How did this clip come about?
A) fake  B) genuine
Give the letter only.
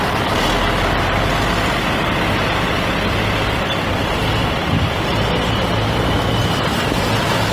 B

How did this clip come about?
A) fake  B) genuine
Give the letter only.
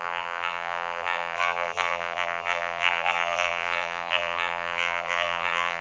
A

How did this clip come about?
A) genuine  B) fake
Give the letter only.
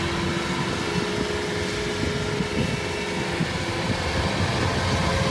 A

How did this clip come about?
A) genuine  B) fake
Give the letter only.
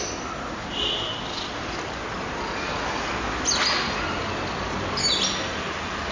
A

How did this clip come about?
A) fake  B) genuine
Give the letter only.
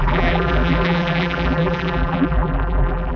A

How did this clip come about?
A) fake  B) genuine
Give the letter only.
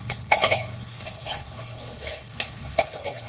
A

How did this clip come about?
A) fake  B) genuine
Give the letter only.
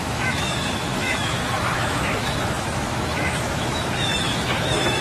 A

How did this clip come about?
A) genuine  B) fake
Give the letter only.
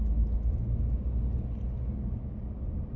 A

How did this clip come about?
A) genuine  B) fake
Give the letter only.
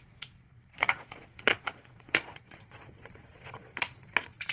B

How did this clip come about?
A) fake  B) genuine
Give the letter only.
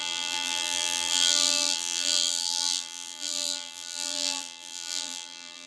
A